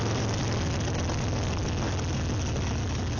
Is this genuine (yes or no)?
yes